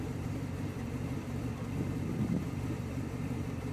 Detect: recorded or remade remade